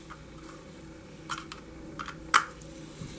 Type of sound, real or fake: real